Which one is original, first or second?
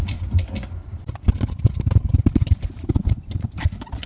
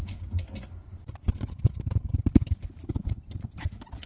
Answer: second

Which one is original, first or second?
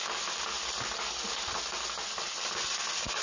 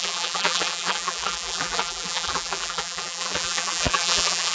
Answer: first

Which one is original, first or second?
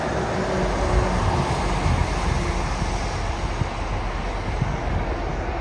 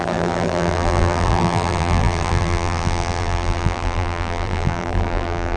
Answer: first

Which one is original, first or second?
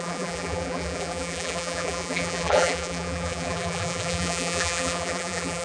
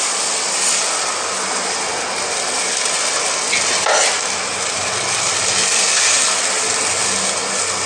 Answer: second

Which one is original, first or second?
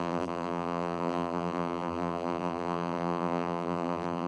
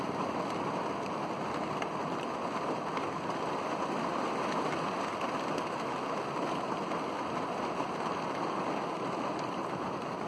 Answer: second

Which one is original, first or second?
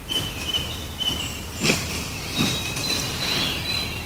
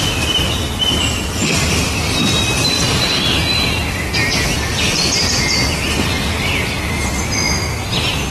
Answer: second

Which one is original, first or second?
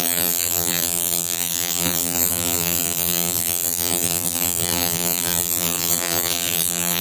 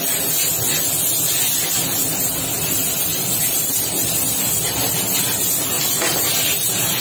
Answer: second